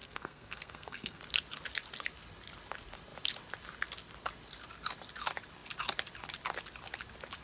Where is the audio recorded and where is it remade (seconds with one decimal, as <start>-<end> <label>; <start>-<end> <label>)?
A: 0.0-1.2 remade; 1.2-7.4 recorded